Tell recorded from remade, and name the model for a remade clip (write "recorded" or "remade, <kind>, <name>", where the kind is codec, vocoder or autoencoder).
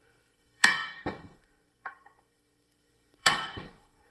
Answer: remade, codec, SNAC